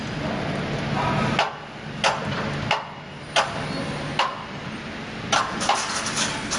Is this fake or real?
real